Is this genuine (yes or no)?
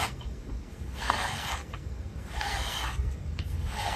no